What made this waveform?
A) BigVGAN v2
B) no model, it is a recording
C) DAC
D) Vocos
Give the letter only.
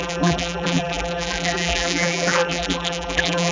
A